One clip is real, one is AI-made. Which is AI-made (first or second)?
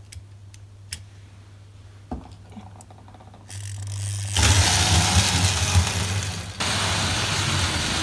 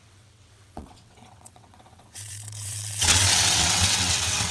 second